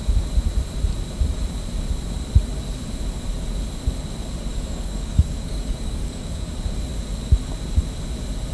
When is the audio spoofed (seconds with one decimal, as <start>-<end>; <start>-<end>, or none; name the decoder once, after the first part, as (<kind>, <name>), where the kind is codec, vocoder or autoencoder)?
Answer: 4.5-6.5 (codec, DAC)